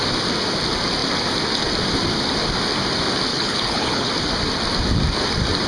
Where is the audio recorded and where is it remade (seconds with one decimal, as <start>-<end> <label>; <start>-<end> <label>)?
0.0-3.3 recorded; 3.3-4.1 remade; 4.1-5.7 recorded